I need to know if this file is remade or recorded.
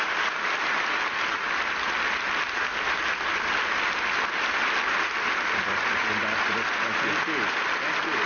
recorded